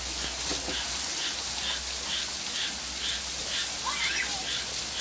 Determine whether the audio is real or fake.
real